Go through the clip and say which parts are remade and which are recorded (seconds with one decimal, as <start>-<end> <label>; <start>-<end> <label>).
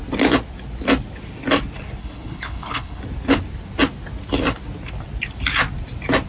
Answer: 0.0-2.0 recorded; 2.0-3.0 remade; 3.0-6.3 recorded